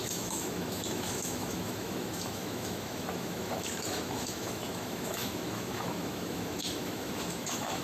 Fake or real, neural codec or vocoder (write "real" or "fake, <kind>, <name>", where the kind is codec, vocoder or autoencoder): fake, autoencoder, DAC-VAE